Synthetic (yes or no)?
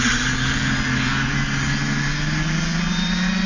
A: no